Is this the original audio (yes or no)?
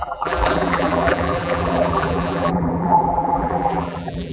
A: no